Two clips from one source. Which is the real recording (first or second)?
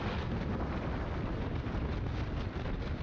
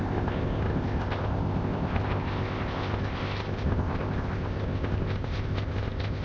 first